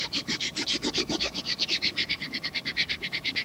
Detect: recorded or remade remade